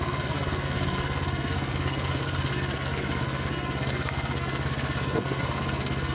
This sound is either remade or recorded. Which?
remade